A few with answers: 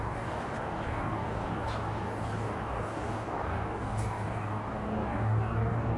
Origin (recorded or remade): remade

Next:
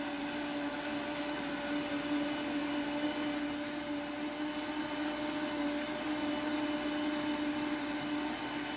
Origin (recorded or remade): recorded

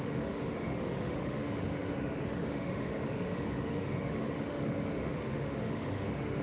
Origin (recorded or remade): remade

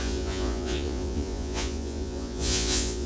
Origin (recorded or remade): remade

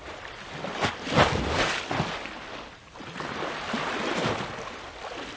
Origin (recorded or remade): recorded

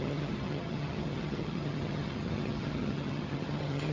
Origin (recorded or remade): remade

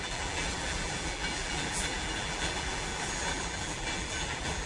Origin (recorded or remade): remade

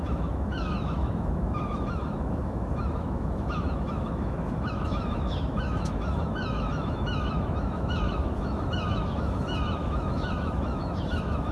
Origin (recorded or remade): remade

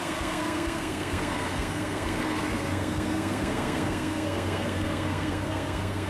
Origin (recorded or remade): remade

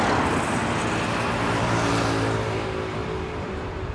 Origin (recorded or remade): recorded